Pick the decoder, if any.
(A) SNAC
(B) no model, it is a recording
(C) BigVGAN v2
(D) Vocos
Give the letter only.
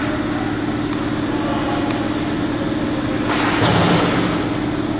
B